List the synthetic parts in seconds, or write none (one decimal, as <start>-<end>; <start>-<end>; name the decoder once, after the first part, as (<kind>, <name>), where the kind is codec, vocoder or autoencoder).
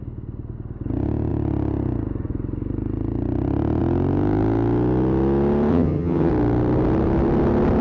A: 5.7-6.3 (vocoder, HiFi-GAN)